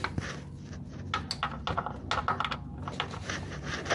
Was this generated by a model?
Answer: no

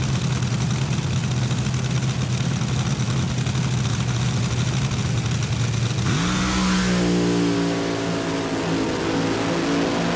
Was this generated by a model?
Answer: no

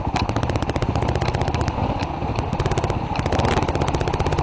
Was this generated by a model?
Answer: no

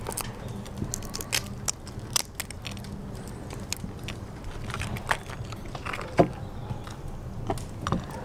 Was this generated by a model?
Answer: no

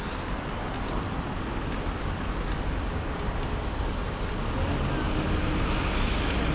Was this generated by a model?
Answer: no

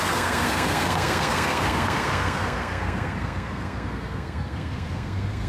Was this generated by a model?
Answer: yes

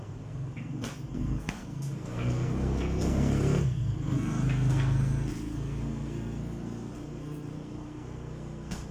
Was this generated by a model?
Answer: yes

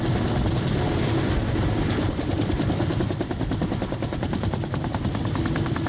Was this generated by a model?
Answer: no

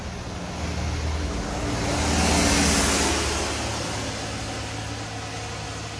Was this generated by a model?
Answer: no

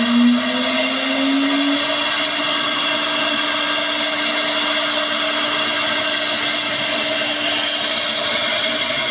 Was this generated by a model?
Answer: no